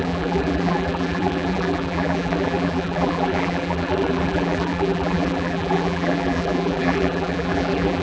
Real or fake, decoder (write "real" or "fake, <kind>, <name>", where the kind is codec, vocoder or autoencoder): fake, vocoder, BigVGAN v2